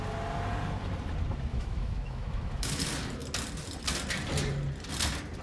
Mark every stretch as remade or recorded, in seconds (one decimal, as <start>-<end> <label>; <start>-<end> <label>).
0.0-1.5 recorded; 1.5-2.8 remade; 2.8-5.4 recorded